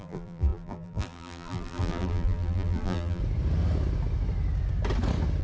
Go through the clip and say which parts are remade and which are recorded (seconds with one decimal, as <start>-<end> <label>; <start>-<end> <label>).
0.0-3.2 remade; 3.2-5.4 recorded